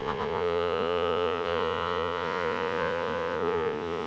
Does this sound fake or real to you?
fake